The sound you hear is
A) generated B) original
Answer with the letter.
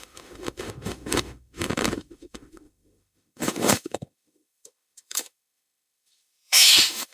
A